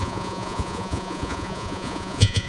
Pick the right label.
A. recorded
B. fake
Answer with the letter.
B